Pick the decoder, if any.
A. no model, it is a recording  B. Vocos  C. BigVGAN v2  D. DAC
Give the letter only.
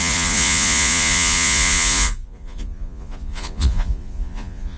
B